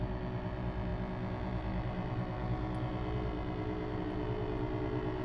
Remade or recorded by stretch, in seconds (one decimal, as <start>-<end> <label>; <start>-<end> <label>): 0.0-5.2 recorded